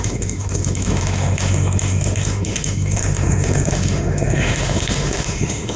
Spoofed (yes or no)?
yes